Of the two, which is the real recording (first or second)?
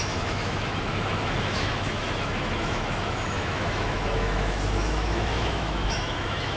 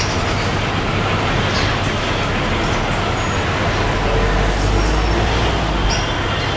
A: second